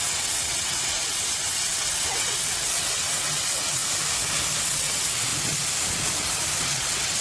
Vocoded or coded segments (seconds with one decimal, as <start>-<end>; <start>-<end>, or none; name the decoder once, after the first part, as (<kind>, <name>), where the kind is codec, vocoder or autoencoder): 0.0-3.8 (vocoder, WaveNeXt); 4.6-5.3; 6.6-7.2